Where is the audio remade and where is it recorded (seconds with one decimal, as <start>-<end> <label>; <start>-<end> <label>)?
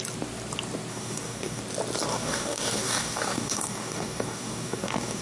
0.0-0.9 recorded; 0.9-1.6 remade; 1.6-2.1 recorded; 2.1-5.2 remade